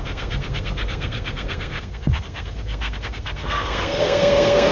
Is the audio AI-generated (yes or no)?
yes